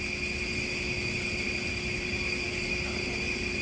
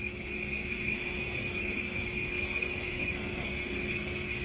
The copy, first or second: second